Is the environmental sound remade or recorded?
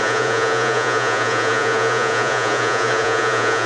remade